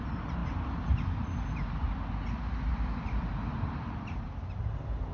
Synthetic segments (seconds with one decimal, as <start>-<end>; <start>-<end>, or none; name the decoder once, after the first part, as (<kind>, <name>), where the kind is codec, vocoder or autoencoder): none